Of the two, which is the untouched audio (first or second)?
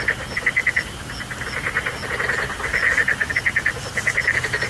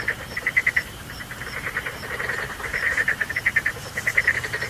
first